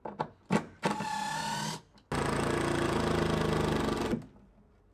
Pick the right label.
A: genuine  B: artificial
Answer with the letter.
A